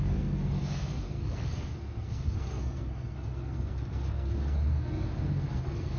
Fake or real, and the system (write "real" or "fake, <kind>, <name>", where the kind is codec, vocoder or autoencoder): fake, codec, SNAC